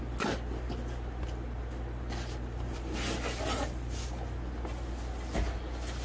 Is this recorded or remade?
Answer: recorded